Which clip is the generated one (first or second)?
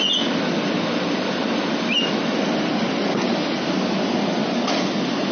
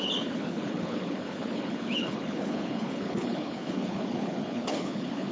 second